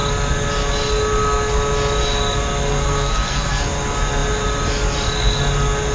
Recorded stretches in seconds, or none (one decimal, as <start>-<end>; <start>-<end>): 0.0-2.7; 3.6-5.9